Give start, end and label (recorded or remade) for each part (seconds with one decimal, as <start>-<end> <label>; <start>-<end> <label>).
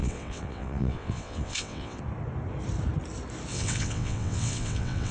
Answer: 0.0-2.0 remade; 2.0-3.5 recorded; 3.5-5.1 remade